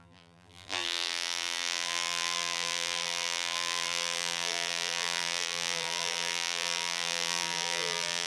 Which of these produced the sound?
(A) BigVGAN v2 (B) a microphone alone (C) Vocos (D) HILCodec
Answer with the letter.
A